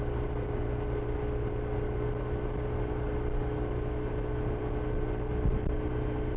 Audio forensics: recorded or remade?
recorded